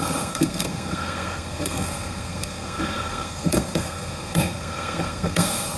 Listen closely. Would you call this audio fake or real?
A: fake